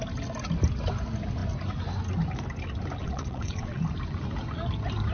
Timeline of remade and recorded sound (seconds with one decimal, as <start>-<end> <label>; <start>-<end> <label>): 0.0-3.0 recorded; 3.0-3.8 remade; 3.8-5.1 recorded